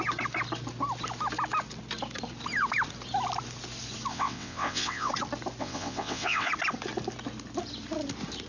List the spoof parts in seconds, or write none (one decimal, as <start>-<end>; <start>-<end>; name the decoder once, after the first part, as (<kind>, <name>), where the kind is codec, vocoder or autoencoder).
4.1-5.1 (vocoder, WaveNeXt); 5.6-6.5